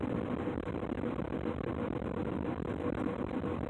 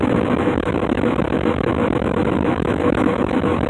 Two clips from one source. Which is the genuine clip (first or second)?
first